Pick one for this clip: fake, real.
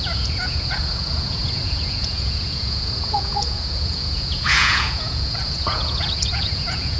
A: fake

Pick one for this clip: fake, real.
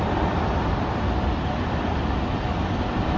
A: real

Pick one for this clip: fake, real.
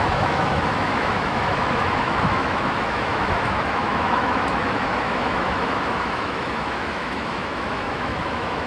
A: fake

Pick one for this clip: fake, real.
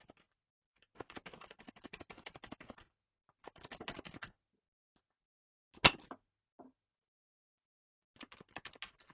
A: real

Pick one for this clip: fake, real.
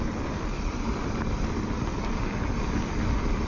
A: real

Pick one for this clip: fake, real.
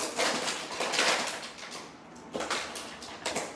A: real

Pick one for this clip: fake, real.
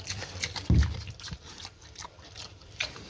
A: fake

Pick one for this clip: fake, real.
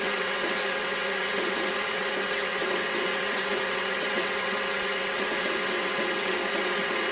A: fake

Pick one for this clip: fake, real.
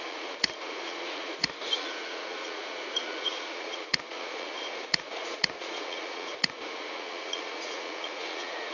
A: fake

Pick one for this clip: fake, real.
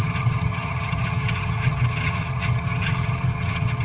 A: fake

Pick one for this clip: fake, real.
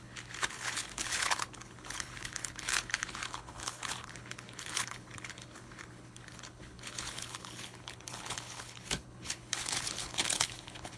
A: fake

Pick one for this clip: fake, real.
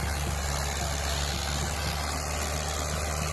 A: real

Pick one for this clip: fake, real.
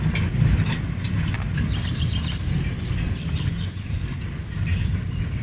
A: fake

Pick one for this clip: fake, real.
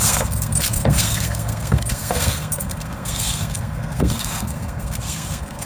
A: fake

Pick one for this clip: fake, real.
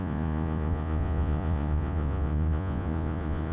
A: fake